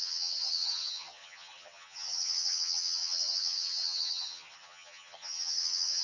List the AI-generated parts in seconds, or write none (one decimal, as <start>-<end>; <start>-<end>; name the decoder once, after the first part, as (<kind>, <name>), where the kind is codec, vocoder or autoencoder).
0.0-6.0 (vocoder, HiFi-GAN)